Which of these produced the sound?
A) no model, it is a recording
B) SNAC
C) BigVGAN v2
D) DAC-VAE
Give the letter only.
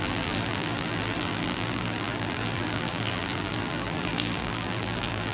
C